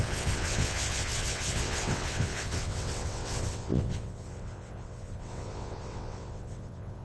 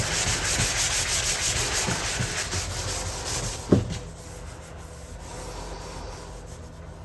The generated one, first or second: first